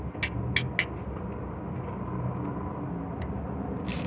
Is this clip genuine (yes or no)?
yes